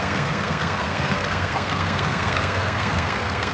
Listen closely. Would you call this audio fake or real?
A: fake